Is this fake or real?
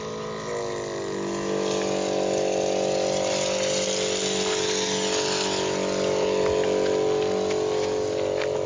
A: real